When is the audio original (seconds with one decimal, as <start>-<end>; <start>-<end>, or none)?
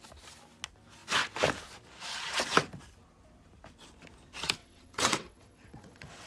0.0-4.6